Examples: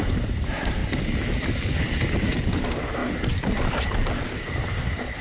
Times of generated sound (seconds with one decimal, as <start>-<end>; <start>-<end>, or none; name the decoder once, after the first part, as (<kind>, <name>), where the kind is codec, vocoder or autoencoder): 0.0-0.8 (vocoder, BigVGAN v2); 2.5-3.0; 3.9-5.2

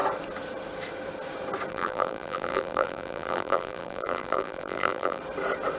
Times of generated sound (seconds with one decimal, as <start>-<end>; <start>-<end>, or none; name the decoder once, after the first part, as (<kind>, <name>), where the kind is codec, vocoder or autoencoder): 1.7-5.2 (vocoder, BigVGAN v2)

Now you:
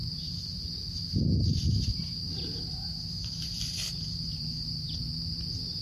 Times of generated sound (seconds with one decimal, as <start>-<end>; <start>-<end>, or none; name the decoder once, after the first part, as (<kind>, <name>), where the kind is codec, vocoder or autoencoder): 0.0-0.6 (vocoder, BigVGAN v2); 1.5-5.0

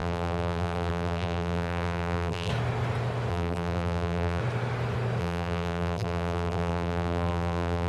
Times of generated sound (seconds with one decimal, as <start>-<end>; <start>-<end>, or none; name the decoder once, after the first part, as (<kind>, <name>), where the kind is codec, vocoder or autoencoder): 0.0-2.5 (vocoder, BigVGAN v2); 3.3-4.4; 5.2-7.9

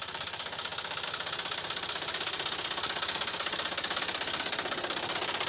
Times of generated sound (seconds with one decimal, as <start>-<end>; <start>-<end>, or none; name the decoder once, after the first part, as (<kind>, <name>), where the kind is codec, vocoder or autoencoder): 0.0-0.7 (vocoder, BigVGAN v2); 4.0-5.5